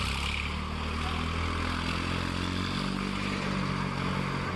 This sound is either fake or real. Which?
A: real